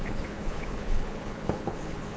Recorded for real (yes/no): no